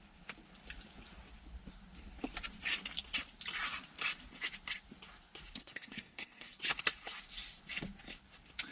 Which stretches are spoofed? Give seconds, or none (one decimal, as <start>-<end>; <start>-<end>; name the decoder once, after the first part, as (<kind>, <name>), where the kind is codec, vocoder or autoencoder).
5.6-6.6 (codec, SNAC)